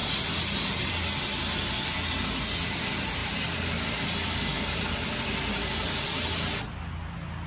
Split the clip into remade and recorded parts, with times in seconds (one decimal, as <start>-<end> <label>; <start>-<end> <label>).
0.0-7.5 recorded